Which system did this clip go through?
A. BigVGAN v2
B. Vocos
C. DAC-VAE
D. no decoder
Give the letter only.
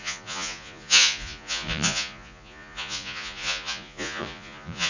B